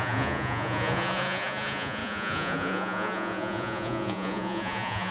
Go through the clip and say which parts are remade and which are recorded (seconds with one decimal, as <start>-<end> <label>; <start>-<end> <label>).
0.0-5.1 remade